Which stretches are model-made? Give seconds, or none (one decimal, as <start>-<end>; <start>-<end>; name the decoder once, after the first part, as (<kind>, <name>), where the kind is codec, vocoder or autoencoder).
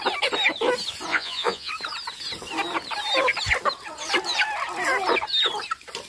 1.1-1.7 (vocoder, Vocos)